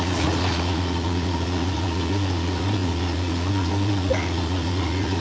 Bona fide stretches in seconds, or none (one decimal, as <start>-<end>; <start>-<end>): none

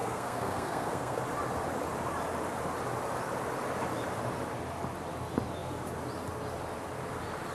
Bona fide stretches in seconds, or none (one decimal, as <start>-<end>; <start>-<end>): 1.2-7.5